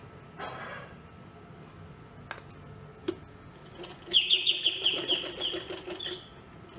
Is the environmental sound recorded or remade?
recorded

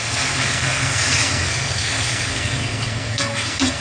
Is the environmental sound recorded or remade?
remade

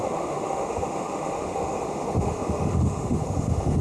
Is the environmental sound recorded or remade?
remade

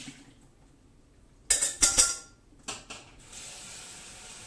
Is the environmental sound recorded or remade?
recorded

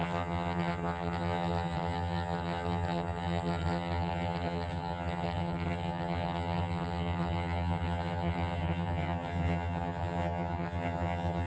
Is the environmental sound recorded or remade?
remade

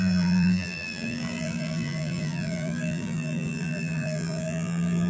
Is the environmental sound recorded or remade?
remade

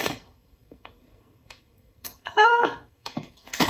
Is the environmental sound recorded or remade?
remade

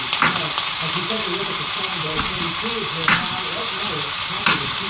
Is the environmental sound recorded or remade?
remade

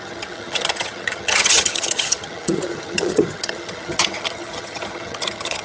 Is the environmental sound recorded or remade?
remade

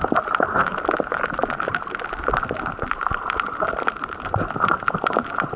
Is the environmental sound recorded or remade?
recorded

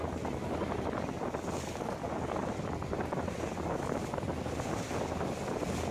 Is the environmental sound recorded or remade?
recorded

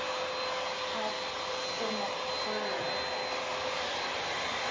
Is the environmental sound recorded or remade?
recorded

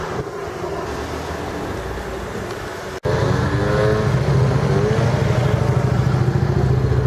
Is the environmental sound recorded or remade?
recorded